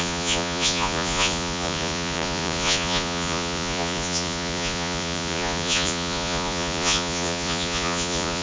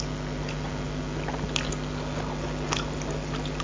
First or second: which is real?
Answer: second